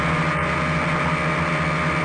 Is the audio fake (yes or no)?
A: no